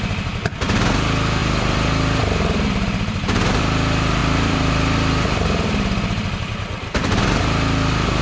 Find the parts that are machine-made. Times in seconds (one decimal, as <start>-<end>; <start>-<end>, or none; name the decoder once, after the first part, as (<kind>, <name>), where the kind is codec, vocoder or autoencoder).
1.4-3.6 (vocoder, BigVGAN v2); 4.2-8.2